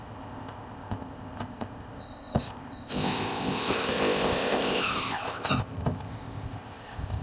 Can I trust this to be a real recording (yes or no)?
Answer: no